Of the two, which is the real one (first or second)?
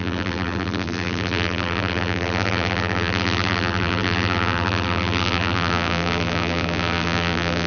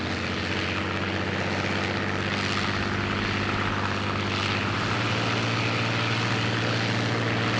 second